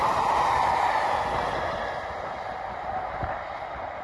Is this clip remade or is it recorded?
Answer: recorded